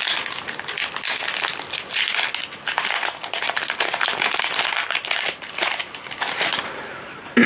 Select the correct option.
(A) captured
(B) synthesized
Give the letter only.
A